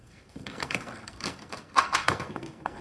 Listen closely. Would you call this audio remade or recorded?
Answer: remade